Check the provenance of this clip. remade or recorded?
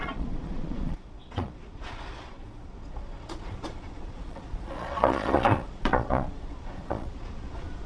remade